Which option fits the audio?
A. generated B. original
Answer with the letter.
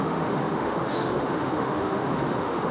A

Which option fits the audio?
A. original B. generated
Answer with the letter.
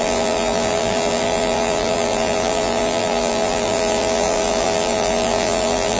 B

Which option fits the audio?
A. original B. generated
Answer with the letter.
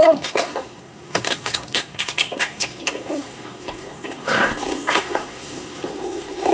B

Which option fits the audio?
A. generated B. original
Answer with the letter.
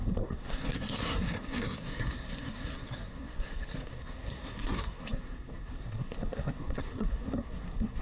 A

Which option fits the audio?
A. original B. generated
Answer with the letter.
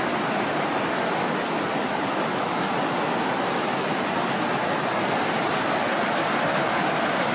A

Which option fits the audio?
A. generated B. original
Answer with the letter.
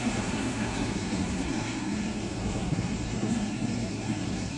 A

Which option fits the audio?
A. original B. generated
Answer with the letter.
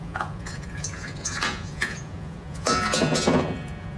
B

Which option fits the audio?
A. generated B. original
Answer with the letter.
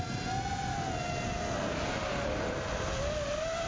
B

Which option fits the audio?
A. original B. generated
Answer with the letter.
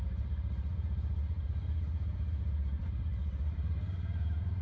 B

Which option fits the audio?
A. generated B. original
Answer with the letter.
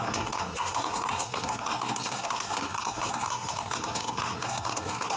A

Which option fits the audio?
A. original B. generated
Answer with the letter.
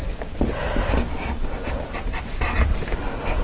B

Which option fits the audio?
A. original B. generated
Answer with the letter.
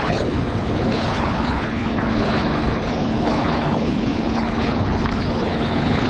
B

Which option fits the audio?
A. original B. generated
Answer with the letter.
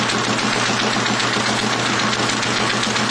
A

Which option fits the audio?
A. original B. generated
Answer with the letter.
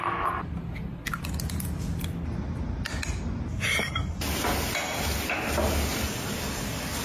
A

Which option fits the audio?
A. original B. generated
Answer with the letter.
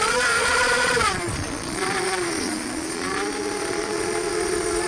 B